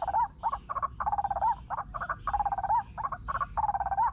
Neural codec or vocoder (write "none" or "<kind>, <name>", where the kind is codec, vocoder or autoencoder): none